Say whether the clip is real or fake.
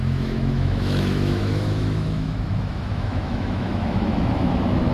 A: fake